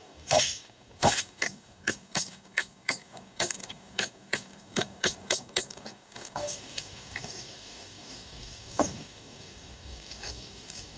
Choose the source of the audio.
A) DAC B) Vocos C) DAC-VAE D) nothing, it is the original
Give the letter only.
A